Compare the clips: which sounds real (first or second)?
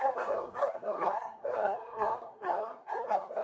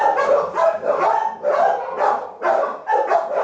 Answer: second